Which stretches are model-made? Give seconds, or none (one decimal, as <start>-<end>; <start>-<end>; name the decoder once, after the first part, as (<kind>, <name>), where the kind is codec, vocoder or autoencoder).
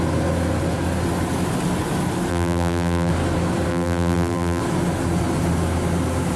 2.3-3.1 (vocoder, BigVGAN v2); 3.7-4.6